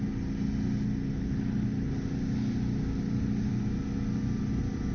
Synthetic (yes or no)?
no